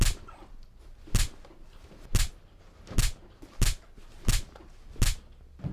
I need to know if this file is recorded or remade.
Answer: recorded